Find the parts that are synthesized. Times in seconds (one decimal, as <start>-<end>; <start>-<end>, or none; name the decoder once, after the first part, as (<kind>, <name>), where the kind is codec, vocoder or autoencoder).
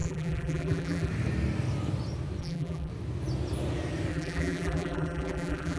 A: 0.0-1.1 (vocoder, BigVGAN v2); 2.4-2.9; 4.1-5.8